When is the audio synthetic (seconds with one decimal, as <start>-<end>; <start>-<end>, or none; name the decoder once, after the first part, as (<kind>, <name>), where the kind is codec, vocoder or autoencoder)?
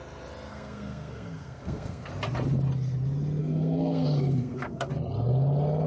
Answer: 0.5-2.1 (codec, SNAC); 3.4-4.9